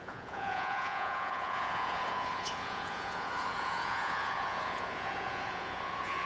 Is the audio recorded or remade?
remade